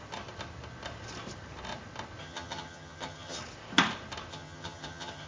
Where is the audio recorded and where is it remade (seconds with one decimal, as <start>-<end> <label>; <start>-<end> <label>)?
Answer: 0.0-2.2 recorded; 2.2-3.4 remade; 3.4-4.3 recorded; 4.3-5.3 remade